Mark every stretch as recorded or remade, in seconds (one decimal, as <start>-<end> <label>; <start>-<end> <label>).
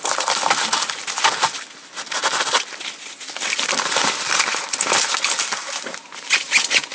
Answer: 0.0-6.9 recorded